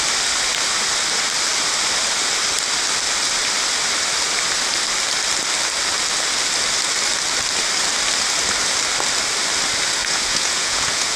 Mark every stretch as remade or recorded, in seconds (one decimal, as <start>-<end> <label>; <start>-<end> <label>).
0.0-10.0 recorded; 10.0-11.2 remade